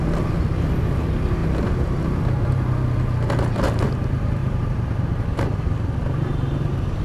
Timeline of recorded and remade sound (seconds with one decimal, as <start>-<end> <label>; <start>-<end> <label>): 0.0-4.4 recorded; 4.4-7.0 remade